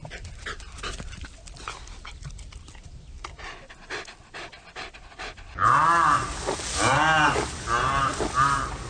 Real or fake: real